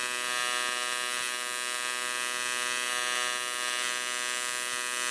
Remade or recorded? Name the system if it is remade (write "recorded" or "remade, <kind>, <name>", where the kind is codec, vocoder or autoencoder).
recorded